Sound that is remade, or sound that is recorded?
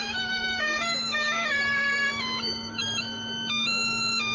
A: remade